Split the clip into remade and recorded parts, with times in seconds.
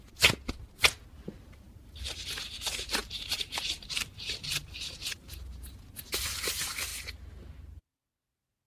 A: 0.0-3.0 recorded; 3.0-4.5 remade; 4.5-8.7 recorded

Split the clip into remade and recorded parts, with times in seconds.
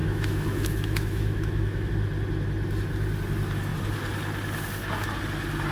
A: 0.0-1.9 remade; 1.9-5.7 recorded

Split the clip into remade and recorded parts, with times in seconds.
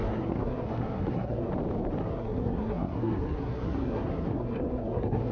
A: 0.0-1.5 remade; 1.5-2.0 recorded; 2.0-5.3 remade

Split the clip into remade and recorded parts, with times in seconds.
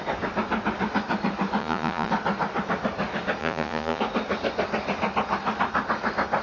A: 0.0-1.6 recorded; 1.6-2.1 remade; 2.1-3.4 recorded; 3.4-4.0 remade; 4.0-6.4 recorded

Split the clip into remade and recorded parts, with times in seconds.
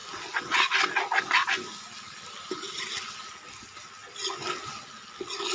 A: 0.0-5.5 recorded